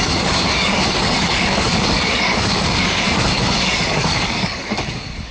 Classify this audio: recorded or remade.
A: remade